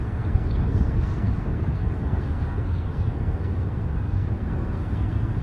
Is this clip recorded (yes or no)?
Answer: no